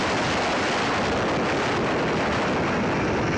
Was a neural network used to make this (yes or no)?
no